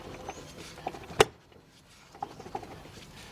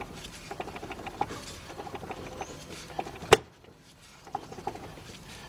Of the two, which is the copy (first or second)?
second